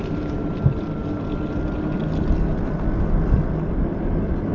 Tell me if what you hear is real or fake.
real